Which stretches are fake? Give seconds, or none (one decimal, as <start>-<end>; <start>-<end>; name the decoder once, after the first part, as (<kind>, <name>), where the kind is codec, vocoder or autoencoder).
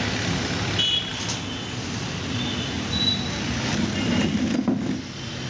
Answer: none